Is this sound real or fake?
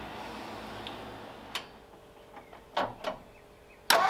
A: real